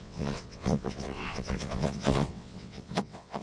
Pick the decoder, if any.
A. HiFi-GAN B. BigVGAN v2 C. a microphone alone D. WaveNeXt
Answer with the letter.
D